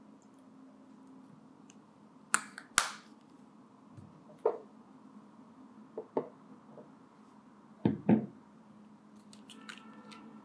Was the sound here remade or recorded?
recorded